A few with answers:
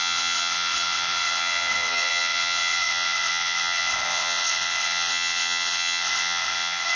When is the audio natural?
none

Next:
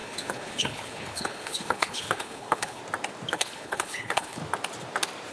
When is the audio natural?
2.8-3.3; 4.4-5.3

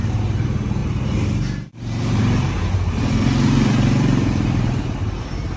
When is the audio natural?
none